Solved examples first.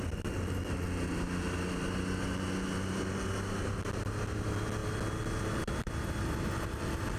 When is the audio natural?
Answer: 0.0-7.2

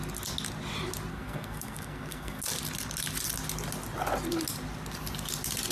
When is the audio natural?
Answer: 0.0-1.1; 2.4-5.7